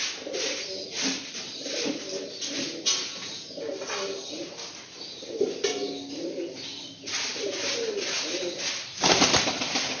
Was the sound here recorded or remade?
recorded